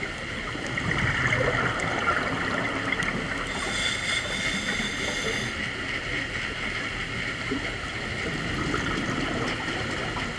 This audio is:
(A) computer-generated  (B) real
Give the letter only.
B